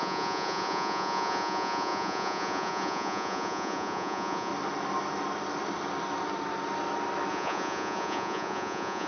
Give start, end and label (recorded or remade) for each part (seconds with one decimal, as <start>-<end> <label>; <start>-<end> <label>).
0.0-4.5 remade; 4.5-7.3 recorded; 7.3-9.1 remade